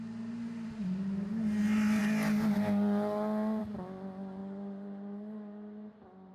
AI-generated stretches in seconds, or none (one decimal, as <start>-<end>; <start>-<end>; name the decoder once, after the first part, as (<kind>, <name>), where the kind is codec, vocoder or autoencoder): none